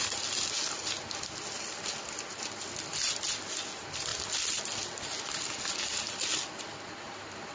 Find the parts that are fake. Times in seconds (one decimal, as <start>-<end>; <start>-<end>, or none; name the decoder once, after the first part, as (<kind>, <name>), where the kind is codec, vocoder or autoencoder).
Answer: none